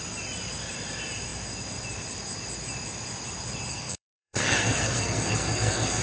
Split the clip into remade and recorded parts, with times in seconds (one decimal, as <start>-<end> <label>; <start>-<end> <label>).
0.0-3.7 recorded; 3.7-6.0 remade

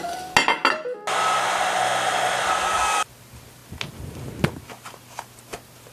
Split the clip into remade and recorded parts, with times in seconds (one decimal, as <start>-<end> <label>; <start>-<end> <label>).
0.0-5.9 recorded

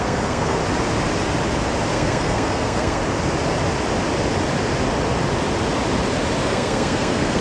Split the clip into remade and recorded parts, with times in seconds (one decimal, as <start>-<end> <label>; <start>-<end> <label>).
0.0-0.6 remade; 0.6-1.9 recorded; 1.9-3.0 remade; 3.0-6.4 recorded; 6.4-7.4 remade

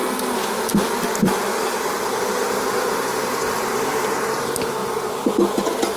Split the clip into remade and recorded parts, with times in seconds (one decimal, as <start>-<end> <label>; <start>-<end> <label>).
0.0-6.0 recorded

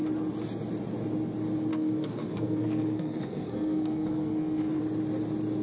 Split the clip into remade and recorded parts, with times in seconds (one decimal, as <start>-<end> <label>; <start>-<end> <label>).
0.0-1.7 recorded; 1.7-4.8 remade; 4.8-5.6 recorded

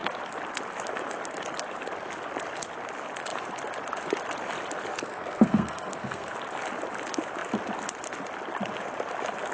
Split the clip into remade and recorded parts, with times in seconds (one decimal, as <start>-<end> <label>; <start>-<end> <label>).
0.0-4.9 recorded; 4.9-6.3 remade; 6.3-9.5 recorded

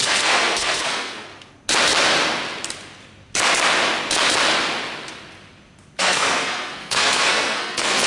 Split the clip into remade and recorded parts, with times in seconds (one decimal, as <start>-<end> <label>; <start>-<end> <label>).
0.0-1.3 remade; 1.3-6.0 recorded; 6.0-8.1 remade

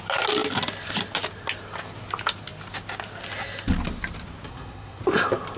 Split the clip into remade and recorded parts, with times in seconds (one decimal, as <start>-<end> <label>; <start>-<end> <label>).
0.0-4.5 recorded; 4.5-5.0 remade; 5.0-5.6 recorded